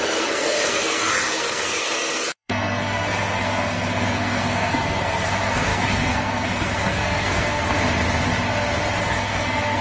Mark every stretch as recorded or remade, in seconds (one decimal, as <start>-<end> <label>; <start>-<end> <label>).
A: 0.0-7.8 remade; 7.8-9.0 recorded; 9.0-9.8 remade

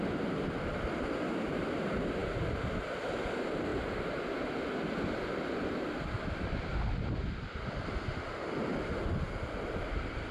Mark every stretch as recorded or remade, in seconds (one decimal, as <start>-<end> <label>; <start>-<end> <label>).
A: 0.0-10.3 recorded

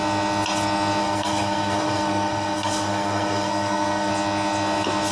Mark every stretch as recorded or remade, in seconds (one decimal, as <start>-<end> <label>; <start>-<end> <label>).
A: 0.0-1.0 recorded; 1.0-4.1 remade; 4.1-5.1 recorded

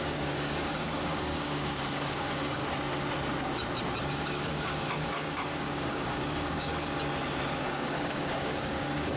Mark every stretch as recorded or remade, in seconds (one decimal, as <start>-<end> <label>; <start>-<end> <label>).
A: 0.0-2.6 remade; 2.6-4.1 recorded; 4.1-6.7 remade; 6.7-7.6 recorded; 7.6-9.2 remade

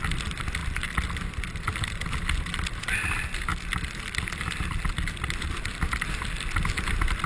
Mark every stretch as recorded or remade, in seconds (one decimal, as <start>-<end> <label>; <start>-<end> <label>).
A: 0.0-7.3 recorded

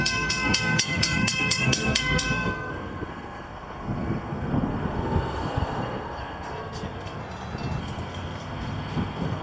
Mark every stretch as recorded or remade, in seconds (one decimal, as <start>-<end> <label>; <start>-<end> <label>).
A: 0.0-7.2 remade; 7.2-7.8 recorded; 7.8-9.4 remade

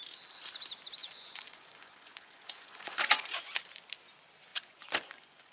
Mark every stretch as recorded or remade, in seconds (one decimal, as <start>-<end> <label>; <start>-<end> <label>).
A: 0.0-1.0 recorded; 1.0-3.6 remade; 3.6-4.5 recorded; 4.5-5.5 remade